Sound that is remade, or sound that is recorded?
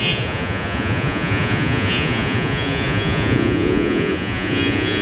remade